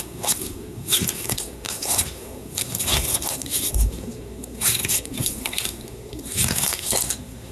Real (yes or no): no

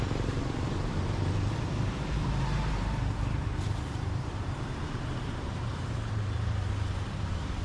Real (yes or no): no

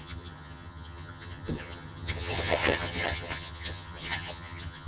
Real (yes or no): no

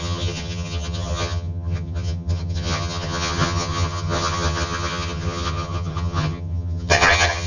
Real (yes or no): no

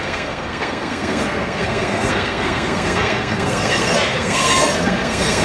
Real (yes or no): no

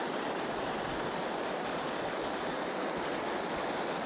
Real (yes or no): yes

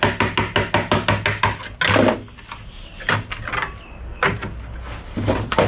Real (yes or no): yes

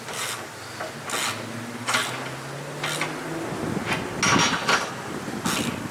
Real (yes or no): yes